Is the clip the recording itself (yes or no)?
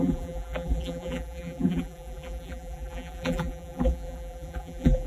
no